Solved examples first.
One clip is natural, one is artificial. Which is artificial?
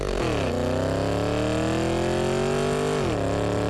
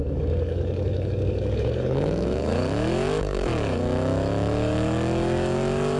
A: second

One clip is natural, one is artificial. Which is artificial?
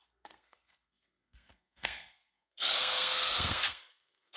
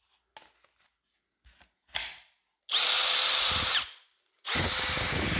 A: first